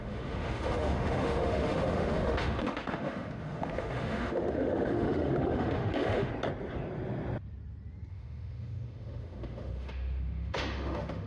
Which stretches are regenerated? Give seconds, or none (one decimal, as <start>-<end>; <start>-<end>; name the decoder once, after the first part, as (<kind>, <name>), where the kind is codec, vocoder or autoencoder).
0.0-6.3 (autoencoder, DAC-VAE); 8.1-11.3

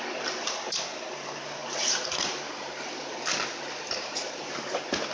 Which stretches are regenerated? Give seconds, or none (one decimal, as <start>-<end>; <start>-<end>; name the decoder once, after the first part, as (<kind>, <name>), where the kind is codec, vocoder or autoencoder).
none

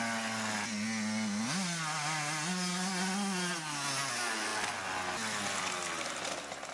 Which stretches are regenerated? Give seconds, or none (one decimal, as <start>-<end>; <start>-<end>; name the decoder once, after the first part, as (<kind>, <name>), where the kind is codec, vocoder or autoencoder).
none